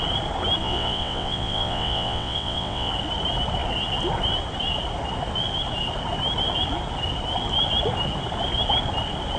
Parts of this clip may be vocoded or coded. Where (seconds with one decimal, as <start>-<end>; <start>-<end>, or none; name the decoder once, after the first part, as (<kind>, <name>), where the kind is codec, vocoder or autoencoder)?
0.6-2.9 (vocoder, WaveNeXt)